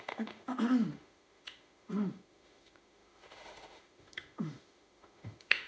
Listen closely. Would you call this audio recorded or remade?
remade